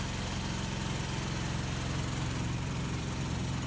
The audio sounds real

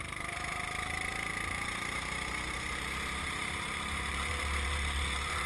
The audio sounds fake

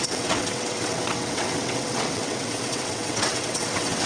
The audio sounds fake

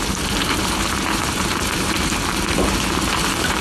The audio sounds fake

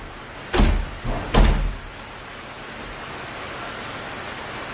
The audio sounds real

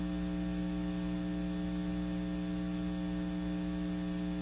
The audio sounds real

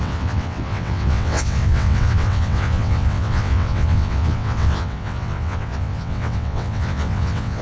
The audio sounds fake